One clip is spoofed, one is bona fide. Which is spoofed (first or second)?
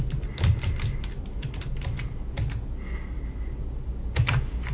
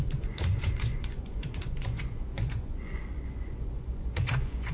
second